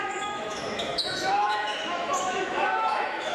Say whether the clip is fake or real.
fake